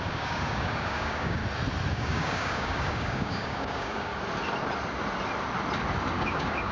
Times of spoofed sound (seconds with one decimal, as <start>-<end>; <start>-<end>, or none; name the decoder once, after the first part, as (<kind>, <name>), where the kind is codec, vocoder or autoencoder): 0.0-1.4 (codec, DAC); 1.9-4.1; 6.2-6.7